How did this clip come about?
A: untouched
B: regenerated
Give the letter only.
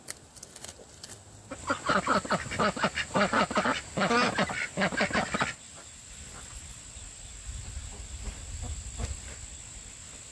A